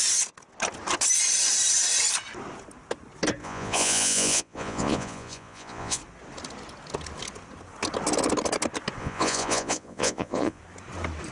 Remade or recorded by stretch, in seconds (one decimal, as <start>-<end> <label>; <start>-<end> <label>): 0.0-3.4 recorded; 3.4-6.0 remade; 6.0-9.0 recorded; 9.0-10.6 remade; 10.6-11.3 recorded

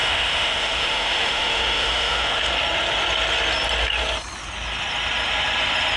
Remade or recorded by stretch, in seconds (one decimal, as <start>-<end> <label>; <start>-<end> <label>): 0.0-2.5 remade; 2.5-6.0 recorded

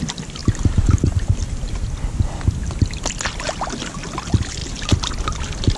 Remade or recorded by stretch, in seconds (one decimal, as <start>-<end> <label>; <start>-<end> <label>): 0.0-5.8 recorded

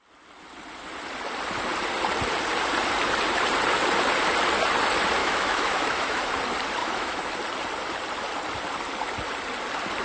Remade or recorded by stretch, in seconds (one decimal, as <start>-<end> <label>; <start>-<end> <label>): 0.0-5.2 recorded; 5.2-6.3 remade; 6.3-6.8 recorded; 6.8-7.3 remade; 7.3-10.0 recorded

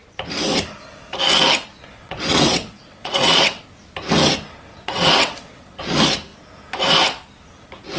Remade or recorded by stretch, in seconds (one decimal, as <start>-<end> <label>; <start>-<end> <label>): 0.0-2.0 recorded; 2.0-3.6 remade; 3.6-4.7 recorded; 4.7-5.8 remade; 5.8-8.0 recorded

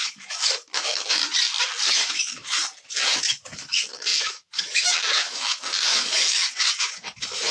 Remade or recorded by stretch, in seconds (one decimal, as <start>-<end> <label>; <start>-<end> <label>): 0.0-1.2 remade; 1.2-1.8 recorded; 1.8-2.6 remade; 2.6-3.3 recorded; 3.3-7.5 remade

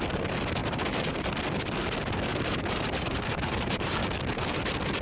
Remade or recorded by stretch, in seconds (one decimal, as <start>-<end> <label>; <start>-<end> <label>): 0.0-0.6 recorded; 0.6-1.3 remade; 1.3-2.3 recorded; 2.3-4.6 remade; 4.6-5.0 recorded